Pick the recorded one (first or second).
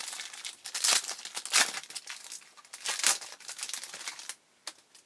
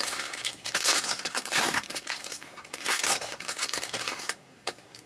first